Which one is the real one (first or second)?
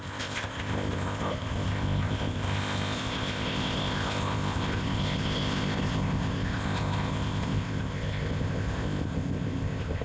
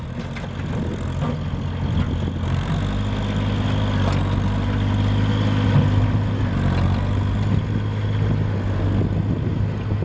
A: second